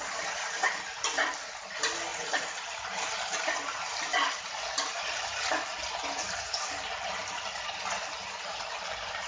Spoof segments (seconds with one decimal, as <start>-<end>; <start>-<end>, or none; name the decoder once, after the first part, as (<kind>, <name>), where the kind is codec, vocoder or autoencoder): none